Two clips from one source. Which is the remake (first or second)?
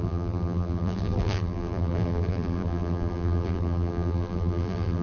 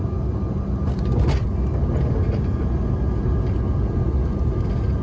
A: first